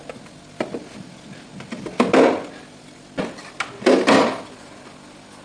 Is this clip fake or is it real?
real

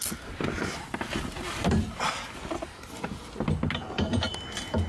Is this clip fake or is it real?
real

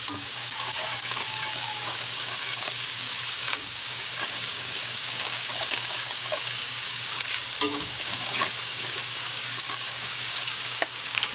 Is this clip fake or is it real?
fake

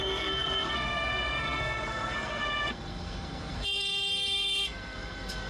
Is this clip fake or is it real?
fake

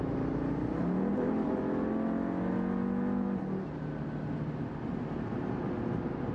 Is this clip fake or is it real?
real